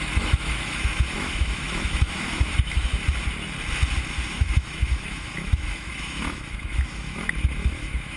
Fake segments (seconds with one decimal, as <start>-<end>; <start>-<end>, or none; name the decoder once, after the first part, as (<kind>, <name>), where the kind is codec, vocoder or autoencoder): 0.0-2.9 (autoencoder, DAC-VAE); 4.3-8.2